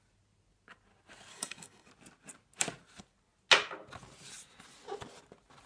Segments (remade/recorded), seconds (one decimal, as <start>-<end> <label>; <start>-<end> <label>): 0.0-1.3 recorded; 1.3-1.9 remade; 1.9-5.7 recorded